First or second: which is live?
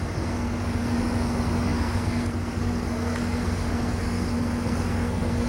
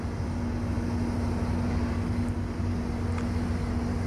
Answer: second